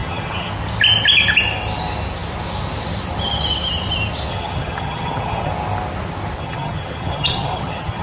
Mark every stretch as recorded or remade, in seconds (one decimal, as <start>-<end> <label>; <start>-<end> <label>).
0.0-0.5 remade; 0.5-4.3 recorded; 4.3-5.5 remade; 5.5-6.4 recorded; 6.4-8.0 remade